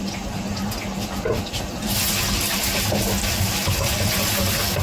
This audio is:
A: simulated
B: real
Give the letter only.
B